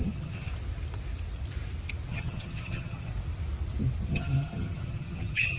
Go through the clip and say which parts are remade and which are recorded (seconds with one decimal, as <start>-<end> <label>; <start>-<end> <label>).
0.0-0.5 remade; 0.5-2.1 recorded; 2.1-3.1 remade; 3.1-4.1 recorded; 4.1-5.6 remade

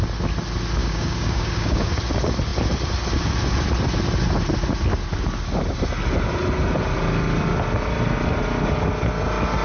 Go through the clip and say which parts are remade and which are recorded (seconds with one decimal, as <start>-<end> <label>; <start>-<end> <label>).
0.0-0.8 recorded; 0.8-1.9 remade; 1.9-9.6 recorded

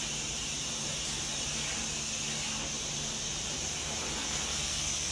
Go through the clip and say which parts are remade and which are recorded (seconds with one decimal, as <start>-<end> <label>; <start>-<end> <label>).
0.0-4.2 recorded; 4.2-5.1 remade